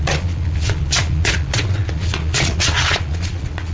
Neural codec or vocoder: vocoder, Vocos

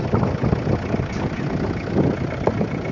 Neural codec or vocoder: none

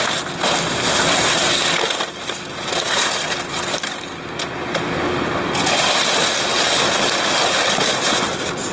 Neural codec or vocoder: none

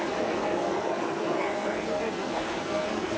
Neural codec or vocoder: codec, SNAC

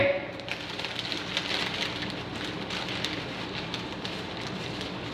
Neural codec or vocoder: none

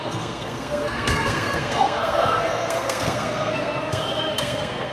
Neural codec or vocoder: codec, SNAC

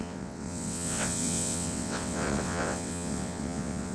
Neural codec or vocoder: vocoder, WaveNeXt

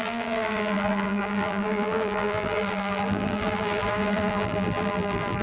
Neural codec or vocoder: vocoder, BigVGAN v2